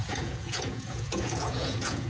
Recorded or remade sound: remade